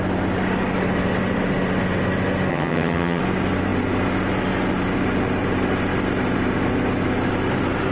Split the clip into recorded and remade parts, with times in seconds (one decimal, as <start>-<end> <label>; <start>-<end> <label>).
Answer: 0.0-2.5 recorded; 2.5-3.2 remade; 3.2-7.9 recorded